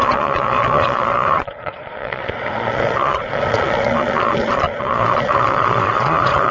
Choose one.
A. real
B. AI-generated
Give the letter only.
B